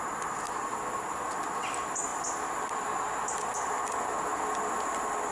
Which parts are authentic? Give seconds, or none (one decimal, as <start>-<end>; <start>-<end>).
0.0-5.3